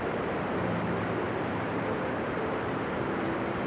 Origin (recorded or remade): remade